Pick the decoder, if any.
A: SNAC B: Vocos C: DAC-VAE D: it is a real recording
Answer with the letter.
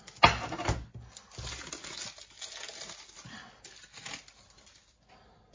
D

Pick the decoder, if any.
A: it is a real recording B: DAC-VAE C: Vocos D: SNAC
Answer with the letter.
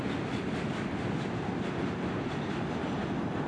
A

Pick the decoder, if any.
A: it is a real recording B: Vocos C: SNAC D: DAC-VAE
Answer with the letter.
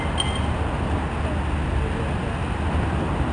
A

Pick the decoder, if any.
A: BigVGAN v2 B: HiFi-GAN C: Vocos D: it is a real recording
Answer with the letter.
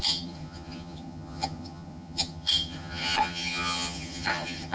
B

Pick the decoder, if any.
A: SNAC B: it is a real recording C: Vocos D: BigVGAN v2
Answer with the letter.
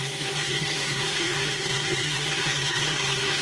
A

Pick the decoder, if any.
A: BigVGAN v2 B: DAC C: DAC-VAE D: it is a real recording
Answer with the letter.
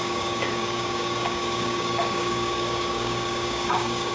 B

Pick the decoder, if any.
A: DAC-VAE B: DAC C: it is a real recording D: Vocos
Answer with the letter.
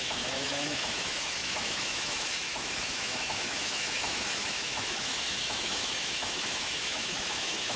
A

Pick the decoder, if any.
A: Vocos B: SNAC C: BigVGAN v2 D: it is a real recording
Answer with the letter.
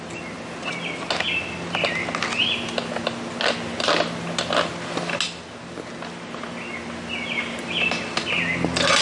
D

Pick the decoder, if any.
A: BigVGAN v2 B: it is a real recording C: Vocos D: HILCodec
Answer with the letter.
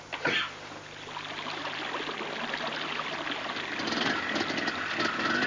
B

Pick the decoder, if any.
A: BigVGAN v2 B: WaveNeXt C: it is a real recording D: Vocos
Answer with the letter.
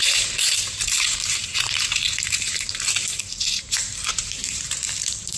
A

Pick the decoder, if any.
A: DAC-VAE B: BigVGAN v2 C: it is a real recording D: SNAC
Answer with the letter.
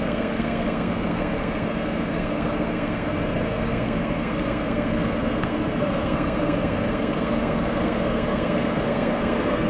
D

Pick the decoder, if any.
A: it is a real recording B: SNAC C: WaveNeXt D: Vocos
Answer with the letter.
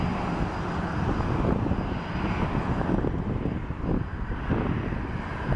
A